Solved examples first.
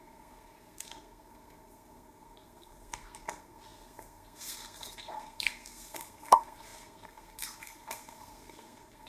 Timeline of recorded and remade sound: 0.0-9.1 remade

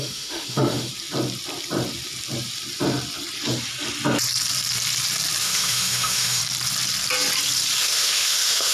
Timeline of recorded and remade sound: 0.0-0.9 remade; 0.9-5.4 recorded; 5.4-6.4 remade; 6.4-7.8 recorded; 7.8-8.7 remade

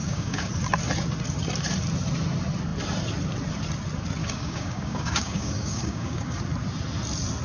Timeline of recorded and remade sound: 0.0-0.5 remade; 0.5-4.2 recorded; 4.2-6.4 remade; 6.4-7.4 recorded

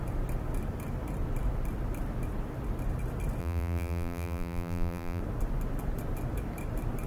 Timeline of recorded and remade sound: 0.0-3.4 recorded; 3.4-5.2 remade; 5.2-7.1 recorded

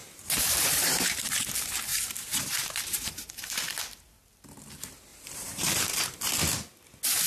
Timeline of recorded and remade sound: 0.0-1.5 remade; 1.5-1.9 recorded; 1.9-3.5 remade; 3.5-5.1 recorded; 5.1-6.3 remade; 6.3-7.3 recorded

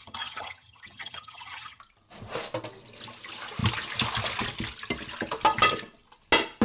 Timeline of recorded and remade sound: 0.0-1.8 remade; 1.8-6.6 recorded